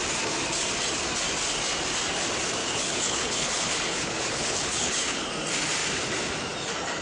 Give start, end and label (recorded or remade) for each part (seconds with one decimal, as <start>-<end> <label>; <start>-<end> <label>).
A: 0.0-2.6 recorded; 2.6-5.3 remade; 5.3-7.0 recorded

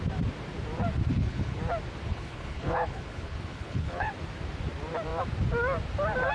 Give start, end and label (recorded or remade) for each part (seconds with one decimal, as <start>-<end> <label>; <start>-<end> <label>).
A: 0.0-1.1 recorded; 1.1-1.6 remade; 1.6-2.1 recorded; 2.1-4.1 remade; 4.1-6.3 recorded

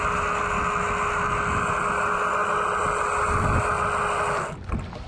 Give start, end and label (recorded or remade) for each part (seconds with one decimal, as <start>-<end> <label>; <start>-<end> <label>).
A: 0.0-5.1 recorded

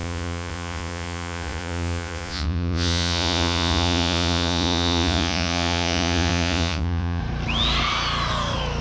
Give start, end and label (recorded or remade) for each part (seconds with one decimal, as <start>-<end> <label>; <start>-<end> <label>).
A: 0.0-7.2 remade; 7.2-8.8 recorded